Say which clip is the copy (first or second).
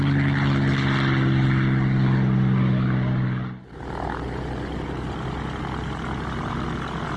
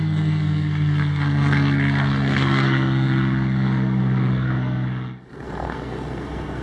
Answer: second